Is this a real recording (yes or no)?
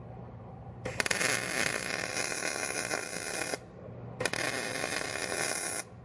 yes